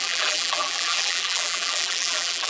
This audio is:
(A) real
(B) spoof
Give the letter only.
B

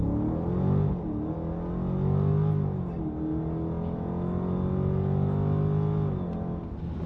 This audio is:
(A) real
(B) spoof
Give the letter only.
A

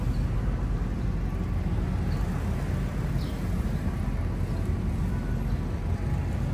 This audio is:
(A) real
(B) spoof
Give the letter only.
A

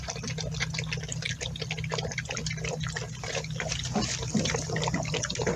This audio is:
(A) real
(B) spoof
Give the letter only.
A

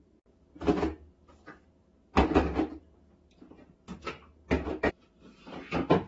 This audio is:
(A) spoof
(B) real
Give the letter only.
B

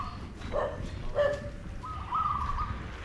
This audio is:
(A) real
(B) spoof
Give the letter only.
A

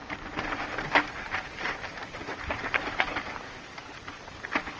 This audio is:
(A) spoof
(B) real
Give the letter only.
A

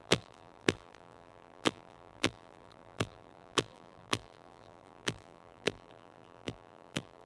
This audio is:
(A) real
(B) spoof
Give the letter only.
B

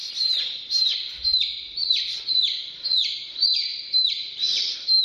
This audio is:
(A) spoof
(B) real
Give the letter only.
A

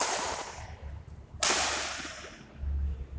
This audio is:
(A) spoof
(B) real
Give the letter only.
B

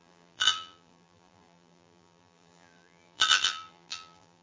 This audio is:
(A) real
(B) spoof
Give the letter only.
B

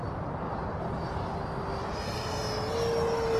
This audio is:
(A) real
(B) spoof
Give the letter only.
A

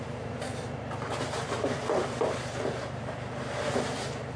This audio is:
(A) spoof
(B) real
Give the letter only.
A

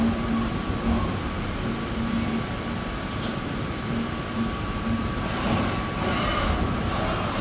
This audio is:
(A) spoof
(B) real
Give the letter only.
B